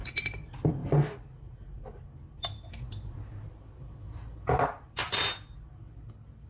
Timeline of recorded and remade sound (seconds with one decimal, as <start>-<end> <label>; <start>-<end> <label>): 0.0-6.5 recorded